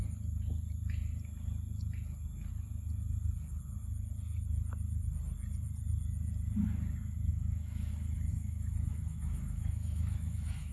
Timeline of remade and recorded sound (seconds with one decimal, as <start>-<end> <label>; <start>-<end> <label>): 0.0-7.3 recorded; 7.3-7.9 remade; 7.9-8.3 recorded; 8.3-10.7 remade

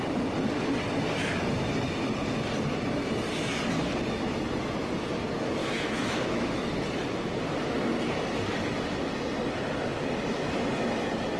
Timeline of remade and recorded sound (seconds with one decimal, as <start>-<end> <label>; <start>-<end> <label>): 0.0-5.6 recorded; 5.6-6.7 remade; 6.7-11.4 recorded

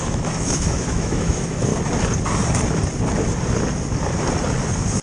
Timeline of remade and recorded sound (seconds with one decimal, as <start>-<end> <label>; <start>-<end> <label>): 0.0-1.7 remade; 1.7-5.0 recorded

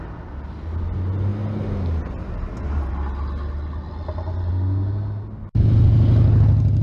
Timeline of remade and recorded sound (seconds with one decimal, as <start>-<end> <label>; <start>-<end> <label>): 0.0-6.8 recorded